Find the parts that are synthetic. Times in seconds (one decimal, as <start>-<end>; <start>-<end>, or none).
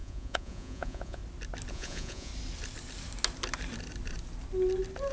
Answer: 0.0-1.2; 1.7-2.3